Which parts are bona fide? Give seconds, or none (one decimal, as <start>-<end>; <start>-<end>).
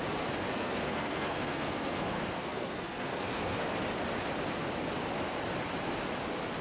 0.0-0.5; 3.7-6.6